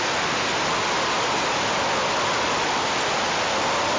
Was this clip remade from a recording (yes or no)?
no